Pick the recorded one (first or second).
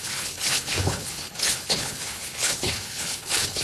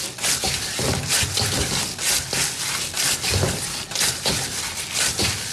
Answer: second